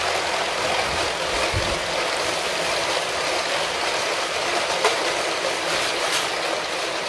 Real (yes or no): yes